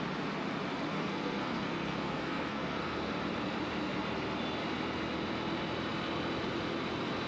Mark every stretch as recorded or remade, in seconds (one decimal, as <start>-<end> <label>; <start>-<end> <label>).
0.0-0.9 recorded; 0.9-3.1 remade; 3.1-7.3 recorded